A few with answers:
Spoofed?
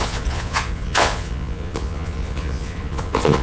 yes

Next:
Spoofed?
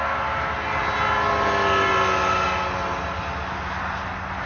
no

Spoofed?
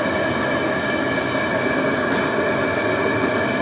no